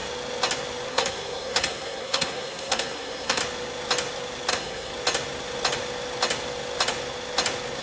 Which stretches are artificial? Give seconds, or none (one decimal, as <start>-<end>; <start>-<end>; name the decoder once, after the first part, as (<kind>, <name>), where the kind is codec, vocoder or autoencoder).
0.9-3.4 (codec, SNAC); 4.5-4.9